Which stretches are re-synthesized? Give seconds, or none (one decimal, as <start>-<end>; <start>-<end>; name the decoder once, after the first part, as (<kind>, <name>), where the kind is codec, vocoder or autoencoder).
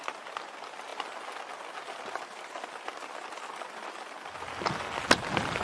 none